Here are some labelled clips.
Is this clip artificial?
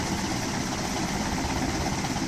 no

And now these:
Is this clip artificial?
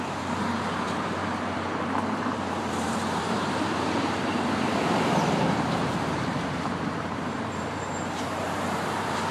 yes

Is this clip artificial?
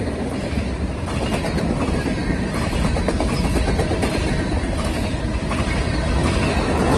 no